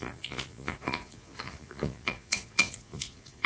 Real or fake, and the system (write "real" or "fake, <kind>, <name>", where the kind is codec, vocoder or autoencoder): fake, vocoder, Vocos